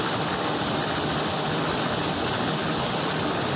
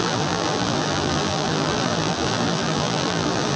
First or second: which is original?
first